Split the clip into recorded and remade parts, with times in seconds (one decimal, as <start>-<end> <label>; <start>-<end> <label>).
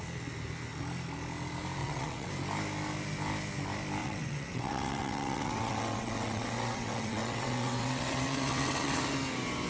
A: 0.0-1.8 recorded; 1.8-2.3 remade; 2.3-4.0 recorded; 4.0-9.0 remade; 9.0-9.7 recorded